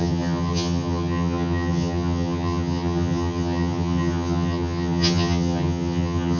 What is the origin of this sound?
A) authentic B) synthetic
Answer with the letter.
B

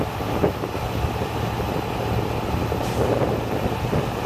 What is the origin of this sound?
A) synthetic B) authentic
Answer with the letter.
B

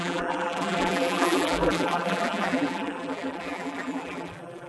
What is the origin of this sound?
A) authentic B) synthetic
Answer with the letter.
B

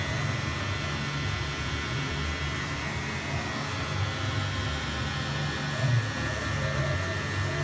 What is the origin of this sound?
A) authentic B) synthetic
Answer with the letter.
A